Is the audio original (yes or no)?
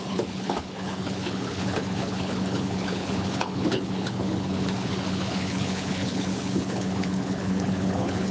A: no